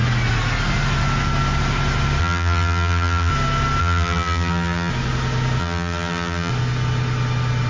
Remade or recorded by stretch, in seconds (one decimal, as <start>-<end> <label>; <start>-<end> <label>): 0.0-2.2 recorded; 2.2-3.3 remade; 3.3-3.8 recorded; 3.8-4.9 remade; 4.9-5.6 recorded; 5.6-6.5 remade; 6.5-7.7 recorded